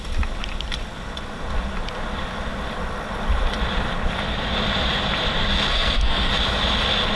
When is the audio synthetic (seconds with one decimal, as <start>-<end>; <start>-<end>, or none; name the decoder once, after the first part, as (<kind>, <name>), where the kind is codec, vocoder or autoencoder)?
5.7-6.3 (codec, SNAC)

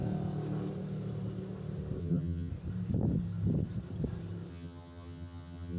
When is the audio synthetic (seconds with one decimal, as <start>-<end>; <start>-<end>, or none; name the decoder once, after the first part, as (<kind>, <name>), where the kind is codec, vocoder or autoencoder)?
2.0-2.5 (vocoder, HiFi-GAN); 4.5-5.8

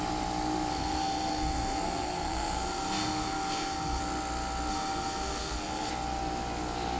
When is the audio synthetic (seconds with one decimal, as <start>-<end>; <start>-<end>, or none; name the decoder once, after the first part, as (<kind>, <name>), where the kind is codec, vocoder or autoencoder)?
0.7-4.0 (codec, SNAC); 4.7-5.9

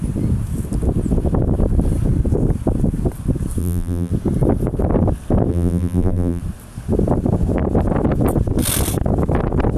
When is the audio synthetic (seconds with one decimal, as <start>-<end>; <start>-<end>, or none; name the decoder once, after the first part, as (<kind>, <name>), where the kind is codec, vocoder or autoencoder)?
3.6-4.1 (vocoder, BigVGAN v2); 5.5-6.4

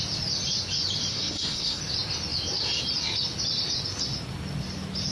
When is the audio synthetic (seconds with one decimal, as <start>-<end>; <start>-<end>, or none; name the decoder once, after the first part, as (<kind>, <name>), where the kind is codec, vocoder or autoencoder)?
1.1-1.8 (codec, SNAC)